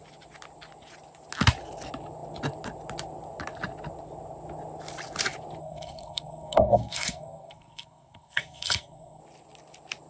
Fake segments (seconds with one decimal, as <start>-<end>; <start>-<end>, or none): 5.6-9.2

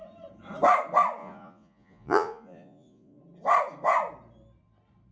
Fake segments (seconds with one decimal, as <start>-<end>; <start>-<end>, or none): 1.2-3.2

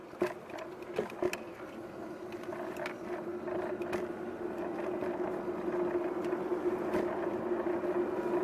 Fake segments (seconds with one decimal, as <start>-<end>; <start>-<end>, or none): none

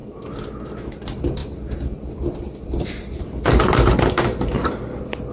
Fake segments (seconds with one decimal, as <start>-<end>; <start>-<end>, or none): 0.9-5.3

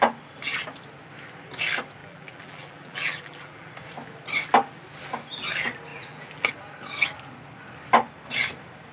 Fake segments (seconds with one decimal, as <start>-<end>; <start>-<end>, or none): 2.0-3.7; 5.9-6.5

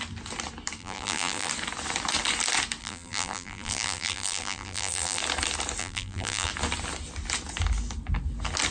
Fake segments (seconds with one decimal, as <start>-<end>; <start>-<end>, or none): 0.8-1.5; 2.8-5.2; 5.8-6.5